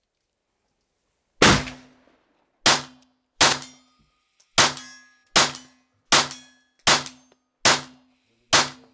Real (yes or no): yes